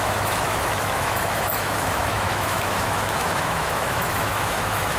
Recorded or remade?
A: remade